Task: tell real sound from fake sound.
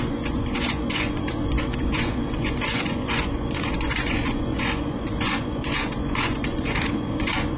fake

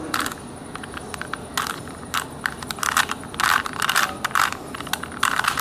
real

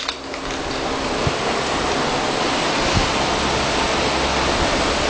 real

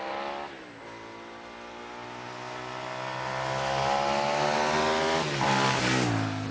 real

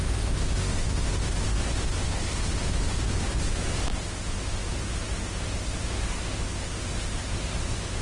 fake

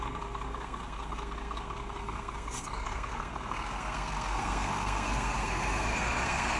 fake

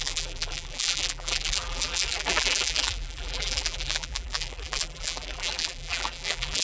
fake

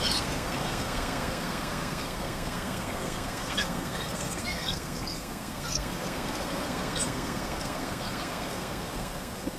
fake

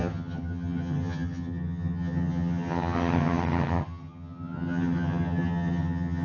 fake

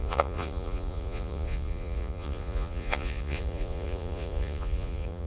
fake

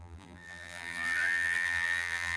fake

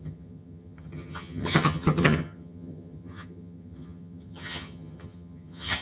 fake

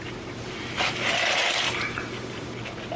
real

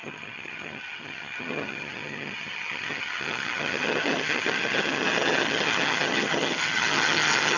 fake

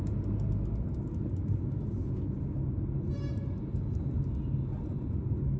real